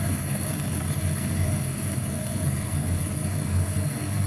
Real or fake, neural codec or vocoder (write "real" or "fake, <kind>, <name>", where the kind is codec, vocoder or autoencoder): fake, codec, SNAC